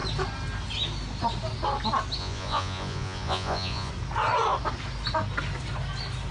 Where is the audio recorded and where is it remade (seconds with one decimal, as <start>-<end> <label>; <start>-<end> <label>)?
0.0-2.2 recorded; 2.2-3.9 remade; 3.9-6.3 recorded

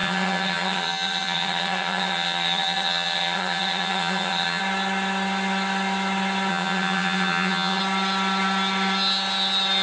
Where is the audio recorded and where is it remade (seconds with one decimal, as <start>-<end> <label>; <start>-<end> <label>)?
0.0-4.6 remade; 4.6-6.5 recorded; 6.5-7.8 remade; 7.8-9.8 recorded